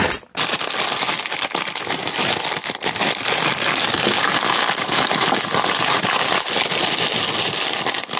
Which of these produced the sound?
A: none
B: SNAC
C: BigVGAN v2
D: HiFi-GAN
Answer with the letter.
A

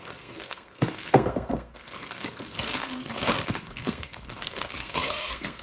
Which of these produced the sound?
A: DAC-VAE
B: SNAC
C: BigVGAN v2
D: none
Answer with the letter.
B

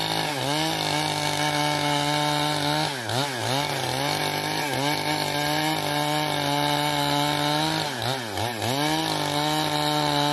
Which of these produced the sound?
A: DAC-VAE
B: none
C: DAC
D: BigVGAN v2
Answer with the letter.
B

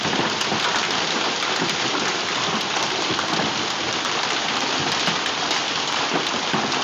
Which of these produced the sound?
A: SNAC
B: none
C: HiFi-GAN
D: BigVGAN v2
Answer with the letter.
B